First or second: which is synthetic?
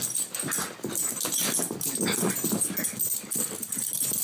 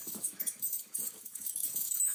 second